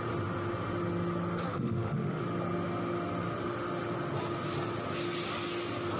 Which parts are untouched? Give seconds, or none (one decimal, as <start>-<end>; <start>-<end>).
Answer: 0.0-1.5; 2.2-6.0